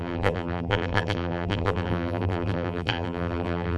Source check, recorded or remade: remade